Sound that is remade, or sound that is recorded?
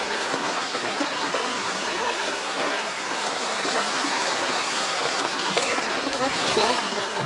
remade